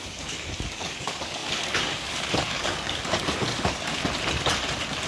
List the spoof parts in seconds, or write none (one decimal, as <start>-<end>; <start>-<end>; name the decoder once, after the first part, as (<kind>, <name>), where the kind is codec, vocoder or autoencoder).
0.0-4.0 (codec, DAC)